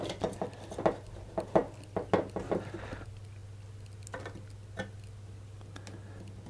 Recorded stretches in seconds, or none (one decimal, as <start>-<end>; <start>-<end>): 0.0-6.5